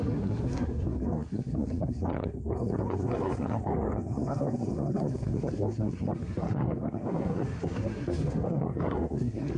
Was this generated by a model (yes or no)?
yes